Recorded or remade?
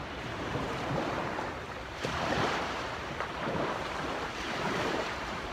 remade